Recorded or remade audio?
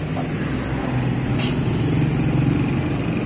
recorded